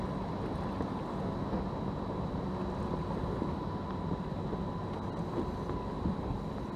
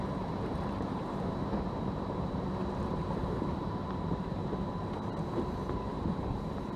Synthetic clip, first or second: second